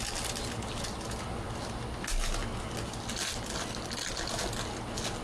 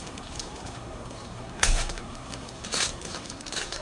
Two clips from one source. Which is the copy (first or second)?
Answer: second